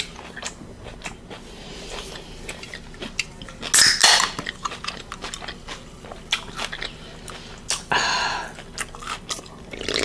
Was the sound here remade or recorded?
recorded